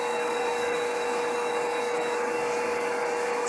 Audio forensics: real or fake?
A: fake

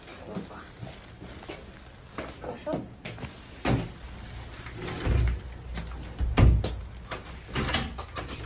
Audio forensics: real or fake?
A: real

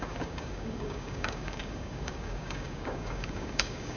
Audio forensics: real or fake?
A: fake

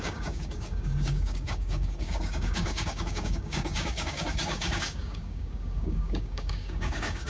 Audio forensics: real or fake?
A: fake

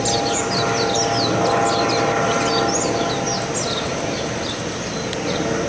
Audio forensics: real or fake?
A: real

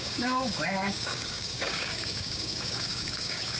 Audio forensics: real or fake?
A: fake